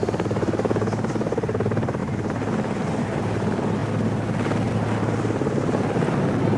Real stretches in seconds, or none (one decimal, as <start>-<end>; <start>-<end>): 0.0-6.6